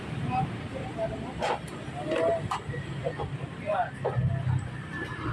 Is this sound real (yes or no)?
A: yes